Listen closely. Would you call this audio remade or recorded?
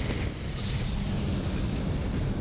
remade